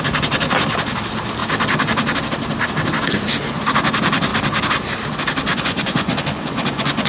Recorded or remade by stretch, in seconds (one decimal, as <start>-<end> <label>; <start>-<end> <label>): 0.0-5.5 recorded; 5.5-7.1 remade